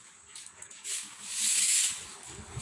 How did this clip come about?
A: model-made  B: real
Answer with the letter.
A